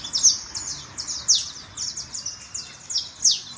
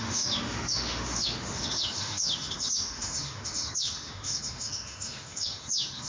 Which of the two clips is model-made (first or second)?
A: second